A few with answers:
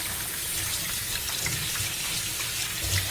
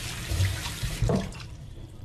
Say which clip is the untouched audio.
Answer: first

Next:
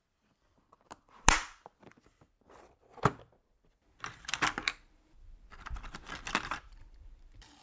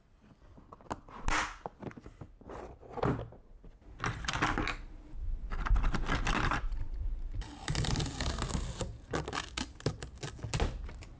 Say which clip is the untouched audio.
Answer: second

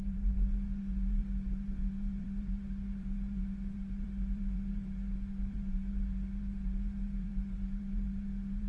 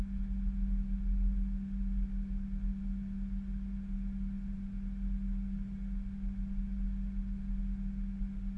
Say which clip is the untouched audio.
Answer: second